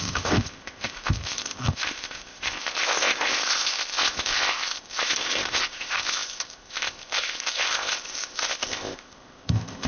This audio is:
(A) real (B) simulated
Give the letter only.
B